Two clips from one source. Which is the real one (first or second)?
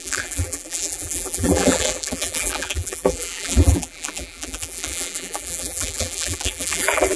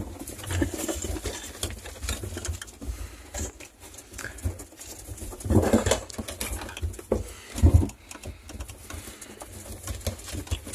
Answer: second